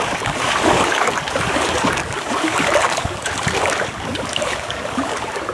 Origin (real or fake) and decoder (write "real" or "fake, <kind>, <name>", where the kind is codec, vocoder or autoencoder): fake, codec, DAC